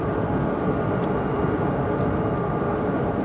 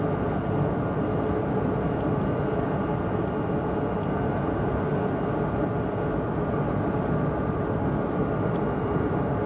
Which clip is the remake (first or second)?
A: first